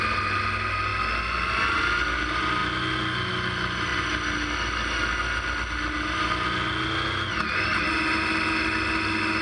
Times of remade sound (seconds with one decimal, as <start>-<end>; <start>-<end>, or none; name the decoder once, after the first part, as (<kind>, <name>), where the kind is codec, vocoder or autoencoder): none